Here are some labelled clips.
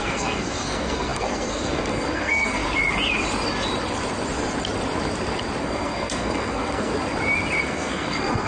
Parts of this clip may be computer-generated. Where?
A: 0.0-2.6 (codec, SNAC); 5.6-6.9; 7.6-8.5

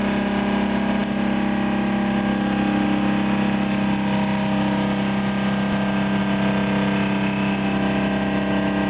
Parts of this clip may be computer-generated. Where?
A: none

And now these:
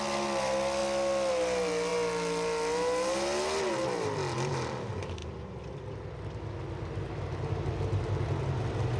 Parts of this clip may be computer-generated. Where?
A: none